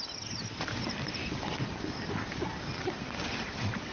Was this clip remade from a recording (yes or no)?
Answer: no